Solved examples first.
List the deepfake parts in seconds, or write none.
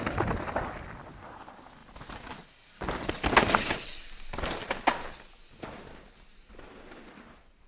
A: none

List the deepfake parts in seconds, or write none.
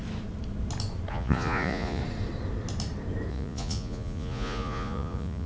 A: 1.1-2.0; 3.3-5.5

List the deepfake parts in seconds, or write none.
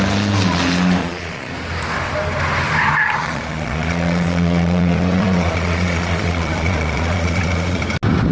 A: 1.0-1.5; 3.2-7.8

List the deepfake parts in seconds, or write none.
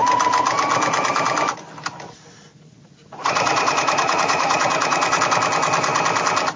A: 2.5-5.2